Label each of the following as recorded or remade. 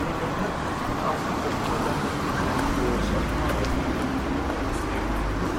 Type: recorded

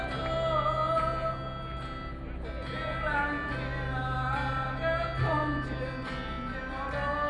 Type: recorded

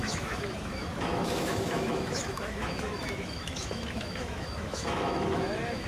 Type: remade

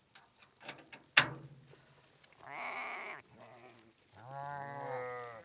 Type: recorded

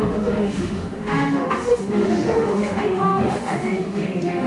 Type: remade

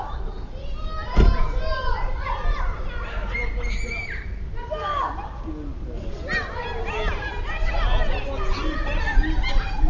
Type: recorded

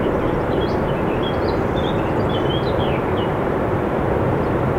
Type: remade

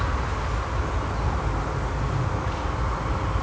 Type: recorded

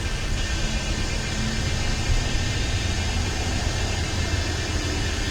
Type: recorded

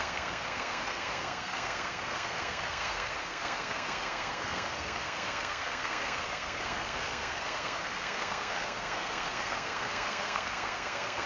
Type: remade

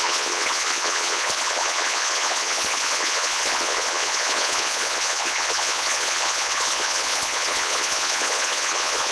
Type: remade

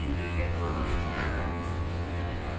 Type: remade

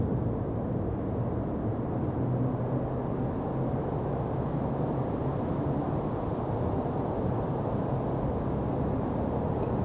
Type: recorded